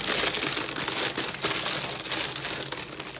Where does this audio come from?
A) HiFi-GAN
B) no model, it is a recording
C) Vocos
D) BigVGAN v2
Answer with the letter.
B